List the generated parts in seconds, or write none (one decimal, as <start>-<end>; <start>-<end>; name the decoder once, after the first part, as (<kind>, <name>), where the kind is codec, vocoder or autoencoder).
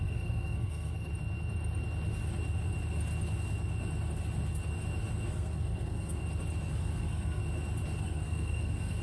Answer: 0.0-1.1 (codec, SNAC); 5.3-6.2; 6.7-7.4; 8.0-9.0